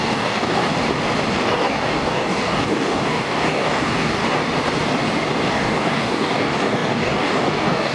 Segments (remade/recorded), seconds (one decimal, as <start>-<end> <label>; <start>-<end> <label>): 0.0-0.7 remade; 0.7-1.3 recorded; 1.3-4.2 remade; 4.2-5.5 recorded; 5.5-7.9 remade